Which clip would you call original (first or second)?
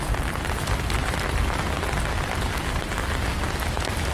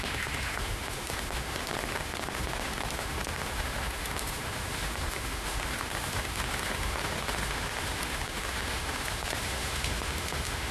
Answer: first